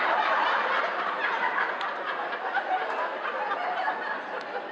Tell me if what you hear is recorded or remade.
recorded